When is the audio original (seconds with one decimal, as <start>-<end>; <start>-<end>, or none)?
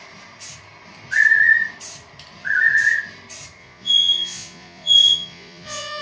0.0-3.6